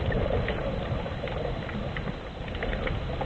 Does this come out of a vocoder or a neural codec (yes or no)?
no